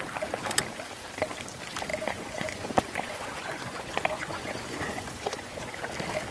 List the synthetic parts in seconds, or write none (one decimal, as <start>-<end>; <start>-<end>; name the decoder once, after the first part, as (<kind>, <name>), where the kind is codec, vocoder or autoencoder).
1.9-5.7 (vocoder, Vocos)